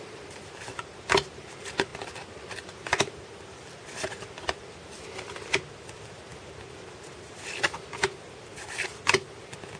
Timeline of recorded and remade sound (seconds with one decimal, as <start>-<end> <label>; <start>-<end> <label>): 0.0-9.8 recorded